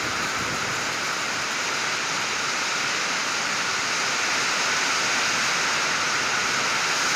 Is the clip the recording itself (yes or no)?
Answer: yes